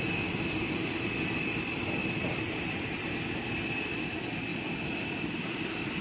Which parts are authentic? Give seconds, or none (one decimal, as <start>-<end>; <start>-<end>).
0.0-6.0